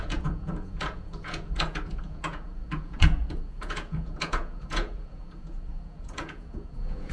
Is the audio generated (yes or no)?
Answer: yes